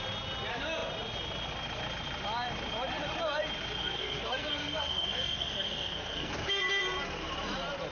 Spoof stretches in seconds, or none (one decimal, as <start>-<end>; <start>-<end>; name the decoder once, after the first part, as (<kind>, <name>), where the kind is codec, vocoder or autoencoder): 3.8-6.3 (codec, SNAC)